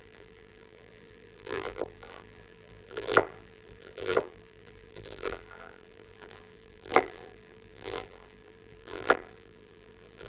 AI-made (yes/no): yes